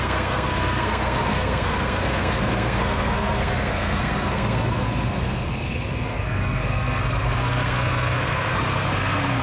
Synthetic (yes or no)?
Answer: yes